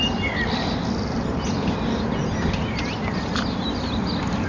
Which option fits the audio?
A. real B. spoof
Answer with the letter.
A